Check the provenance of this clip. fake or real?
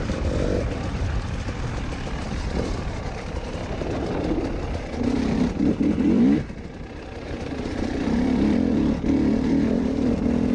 fake